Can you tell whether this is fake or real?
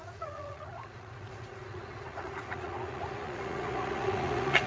fake